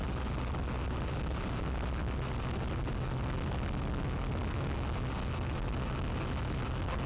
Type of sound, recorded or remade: recorded